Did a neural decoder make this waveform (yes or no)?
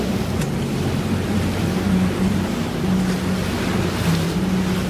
no